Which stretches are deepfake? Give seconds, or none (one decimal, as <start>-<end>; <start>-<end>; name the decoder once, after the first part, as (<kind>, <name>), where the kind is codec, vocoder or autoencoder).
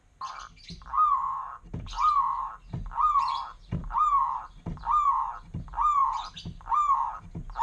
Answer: 3.8-4.4 (vocoder, BigVGAN v2); 6.0-6.6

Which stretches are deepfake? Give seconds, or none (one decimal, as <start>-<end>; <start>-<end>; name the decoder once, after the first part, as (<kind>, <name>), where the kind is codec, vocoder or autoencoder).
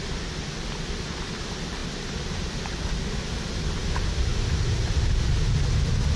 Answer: none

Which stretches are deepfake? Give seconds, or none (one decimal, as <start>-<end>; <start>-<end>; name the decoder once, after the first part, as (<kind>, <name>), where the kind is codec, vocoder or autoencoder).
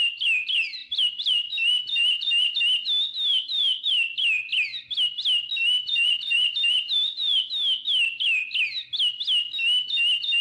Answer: 0.8-2.6 (vocoder, BigVGAN v2); 3.3-3.9; 5.6-7.4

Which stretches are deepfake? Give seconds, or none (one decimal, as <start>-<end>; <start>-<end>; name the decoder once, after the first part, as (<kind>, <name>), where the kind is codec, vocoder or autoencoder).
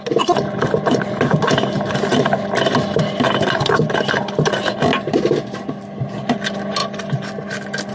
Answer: 6.8-7.9 (vocoder, BigVGAN v2)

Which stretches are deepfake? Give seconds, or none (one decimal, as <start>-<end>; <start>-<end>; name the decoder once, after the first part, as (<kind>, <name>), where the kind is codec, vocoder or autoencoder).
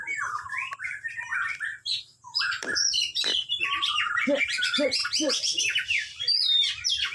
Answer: 0.0-1.3 (vocoder, BigVGAN v2); 1.8-3.1; 3.8-7.1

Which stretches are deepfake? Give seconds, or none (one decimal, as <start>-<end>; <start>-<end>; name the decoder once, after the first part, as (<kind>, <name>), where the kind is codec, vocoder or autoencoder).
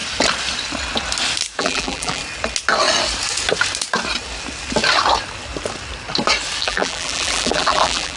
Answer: 1.6-2.2 (vocoder, BigVGAN v2); 6.6-8.2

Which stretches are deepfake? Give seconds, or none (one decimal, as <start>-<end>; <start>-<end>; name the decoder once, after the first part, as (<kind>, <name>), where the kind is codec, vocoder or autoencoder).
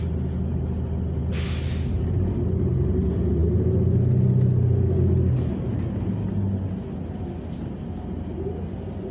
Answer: none